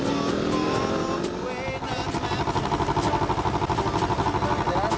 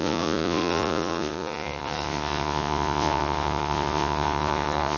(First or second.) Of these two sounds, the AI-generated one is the second